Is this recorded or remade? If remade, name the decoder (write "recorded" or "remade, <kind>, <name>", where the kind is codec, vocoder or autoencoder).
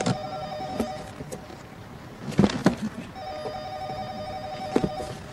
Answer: recorded